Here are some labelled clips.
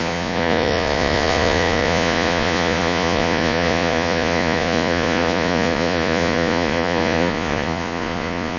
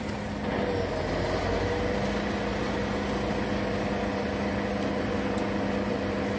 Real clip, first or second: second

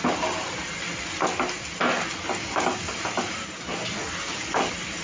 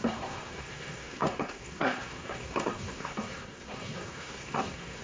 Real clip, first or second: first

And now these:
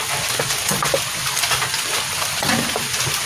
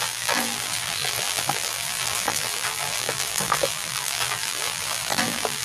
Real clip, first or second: first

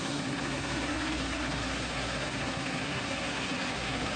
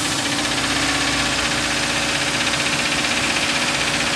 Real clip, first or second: second